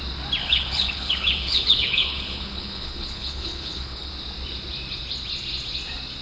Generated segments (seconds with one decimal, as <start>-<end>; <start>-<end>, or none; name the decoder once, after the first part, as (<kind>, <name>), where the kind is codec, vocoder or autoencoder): 0.4-4.1 (codec, HILCodec)